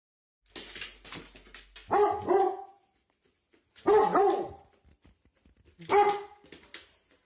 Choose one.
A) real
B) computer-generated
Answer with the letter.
A